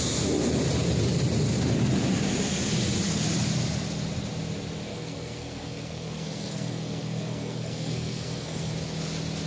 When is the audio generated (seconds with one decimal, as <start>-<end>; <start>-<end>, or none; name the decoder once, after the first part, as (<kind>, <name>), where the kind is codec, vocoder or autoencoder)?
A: 4.9-8.7 (codec, SNAC)